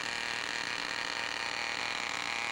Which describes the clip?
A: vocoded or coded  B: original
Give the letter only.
B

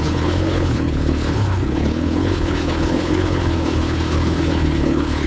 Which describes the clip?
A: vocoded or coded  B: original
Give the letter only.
A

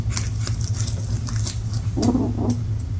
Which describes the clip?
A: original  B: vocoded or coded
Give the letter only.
A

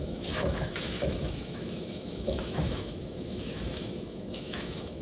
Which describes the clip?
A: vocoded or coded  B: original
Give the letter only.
A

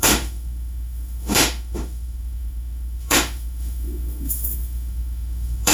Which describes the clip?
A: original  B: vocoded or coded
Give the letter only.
B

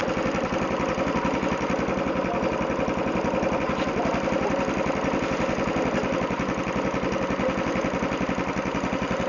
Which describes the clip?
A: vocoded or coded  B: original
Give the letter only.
B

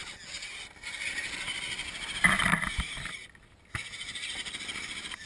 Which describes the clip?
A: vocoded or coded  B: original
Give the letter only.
B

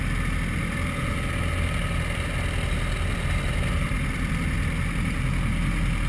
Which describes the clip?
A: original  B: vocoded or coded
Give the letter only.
A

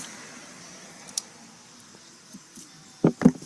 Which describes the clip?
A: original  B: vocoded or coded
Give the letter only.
B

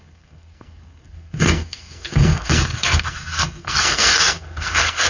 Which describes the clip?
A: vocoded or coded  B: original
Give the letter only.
A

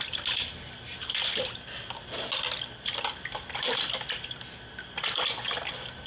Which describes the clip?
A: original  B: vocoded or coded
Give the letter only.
A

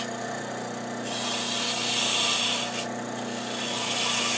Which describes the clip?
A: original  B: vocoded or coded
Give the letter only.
A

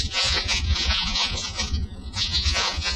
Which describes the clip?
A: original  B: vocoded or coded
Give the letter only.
B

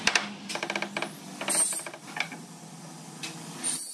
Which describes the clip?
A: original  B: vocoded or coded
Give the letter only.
A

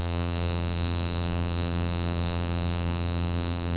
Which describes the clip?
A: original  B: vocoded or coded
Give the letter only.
B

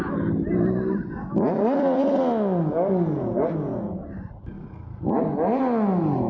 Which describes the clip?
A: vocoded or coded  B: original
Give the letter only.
B